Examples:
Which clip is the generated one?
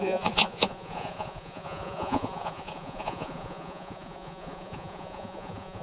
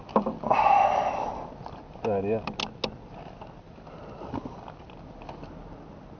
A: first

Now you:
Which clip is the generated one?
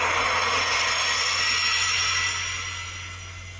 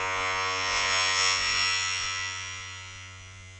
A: second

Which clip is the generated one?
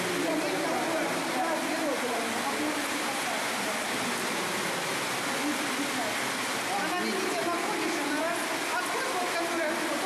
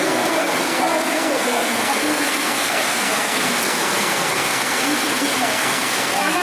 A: second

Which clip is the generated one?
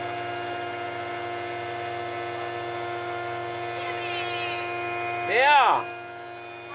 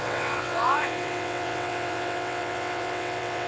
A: second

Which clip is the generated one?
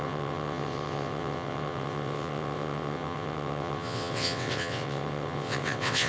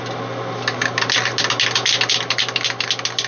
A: first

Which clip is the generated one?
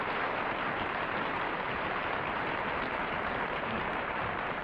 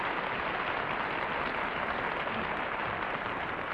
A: first